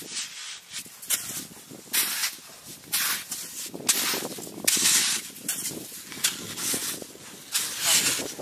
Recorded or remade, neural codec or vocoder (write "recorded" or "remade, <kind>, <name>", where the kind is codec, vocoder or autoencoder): recorded